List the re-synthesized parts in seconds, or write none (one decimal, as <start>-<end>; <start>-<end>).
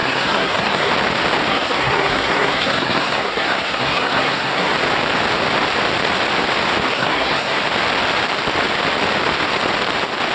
0.0-0.9; 1.5-4.7; 6.9-7.6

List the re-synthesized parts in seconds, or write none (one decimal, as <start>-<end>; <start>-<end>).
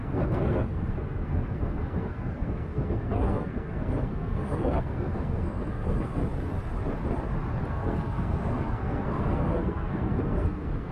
0.0-6.2; 7.7-10.9